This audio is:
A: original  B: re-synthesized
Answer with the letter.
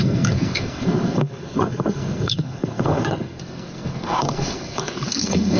B